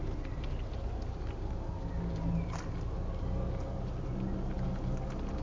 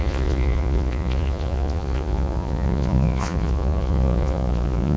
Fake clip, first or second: second